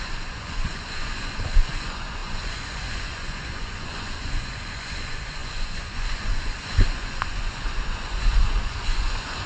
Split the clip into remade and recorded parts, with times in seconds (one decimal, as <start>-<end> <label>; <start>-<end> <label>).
0.0-9.5 remade